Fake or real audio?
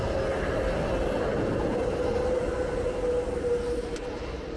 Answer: real